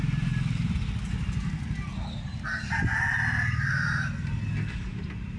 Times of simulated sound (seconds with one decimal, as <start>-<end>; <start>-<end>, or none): none